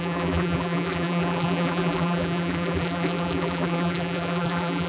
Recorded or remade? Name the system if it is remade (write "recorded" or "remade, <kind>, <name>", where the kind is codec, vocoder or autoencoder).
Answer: remade, vocoder, BigVGAN v2